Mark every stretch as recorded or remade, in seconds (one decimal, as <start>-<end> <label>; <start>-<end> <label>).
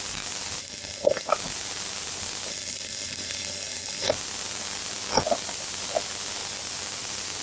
0.0-0.6 recorded; 0.6-1.3 remade; 1.3-2.5 recorded; 2.5-4.1 remade; 4.1-7.4 recorded